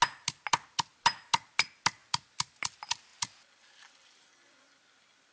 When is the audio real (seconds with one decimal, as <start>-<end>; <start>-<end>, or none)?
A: 0.0-5.3